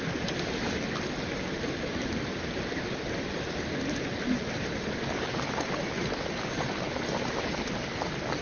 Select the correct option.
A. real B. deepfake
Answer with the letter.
A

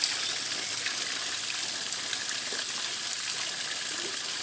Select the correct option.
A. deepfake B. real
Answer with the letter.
B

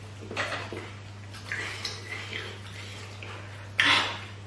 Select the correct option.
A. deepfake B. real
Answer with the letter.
B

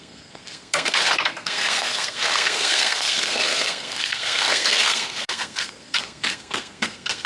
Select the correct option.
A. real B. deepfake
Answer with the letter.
B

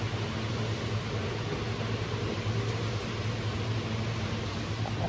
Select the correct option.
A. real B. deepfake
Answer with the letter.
A